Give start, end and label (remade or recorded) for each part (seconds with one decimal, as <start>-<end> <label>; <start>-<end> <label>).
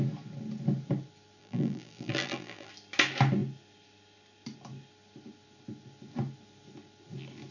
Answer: 0.0-1.4 recorded; 1.4-2.7 remade; 2.7-7.5 recorded